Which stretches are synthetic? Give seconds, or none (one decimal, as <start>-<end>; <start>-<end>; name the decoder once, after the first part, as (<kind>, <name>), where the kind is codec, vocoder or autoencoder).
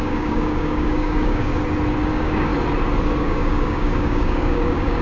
0.0-1.5 (codec, DAC); 2.1-2.5; 3.2-5.0